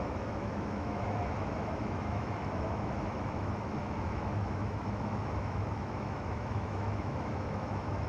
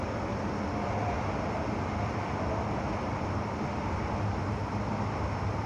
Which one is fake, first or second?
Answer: first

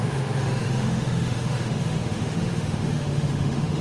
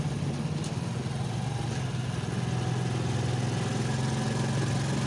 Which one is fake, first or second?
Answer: first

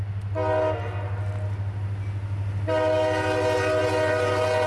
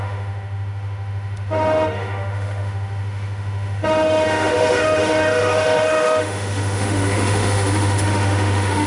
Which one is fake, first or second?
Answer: second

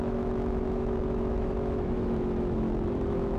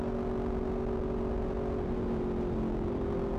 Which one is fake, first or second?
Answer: first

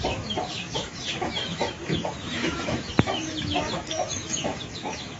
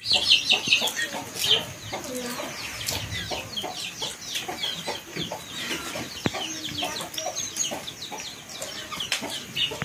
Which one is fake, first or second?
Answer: first